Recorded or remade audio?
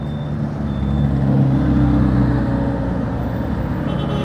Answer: recorded